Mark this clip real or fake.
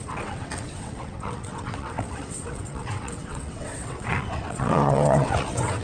fake